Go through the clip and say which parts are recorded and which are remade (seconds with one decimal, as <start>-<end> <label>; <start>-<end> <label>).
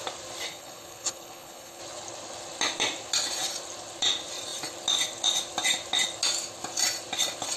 0.0-0.5 recorded; 0.5-1.8 remade; 1.8-7.6 recorded